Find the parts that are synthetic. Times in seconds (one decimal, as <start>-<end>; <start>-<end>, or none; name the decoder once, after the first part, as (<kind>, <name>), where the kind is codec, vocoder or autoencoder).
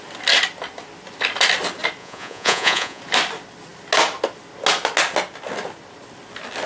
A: 2.0-3.0 (vocoder, Vocos)